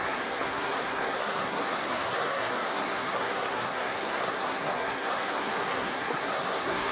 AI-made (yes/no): yes